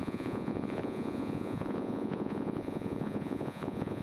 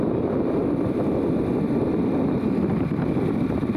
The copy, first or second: first